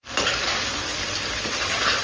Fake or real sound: real